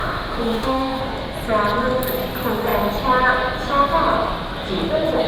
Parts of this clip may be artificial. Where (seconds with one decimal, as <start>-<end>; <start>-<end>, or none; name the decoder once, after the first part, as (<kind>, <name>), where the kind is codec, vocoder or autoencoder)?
0.0-1.0 (autoencoder, DAC-VAE)